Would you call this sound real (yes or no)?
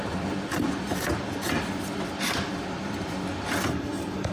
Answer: no